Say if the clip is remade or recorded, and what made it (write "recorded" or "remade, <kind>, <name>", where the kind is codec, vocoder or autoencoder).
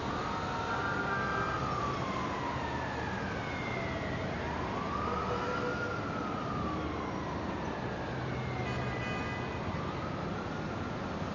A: recorded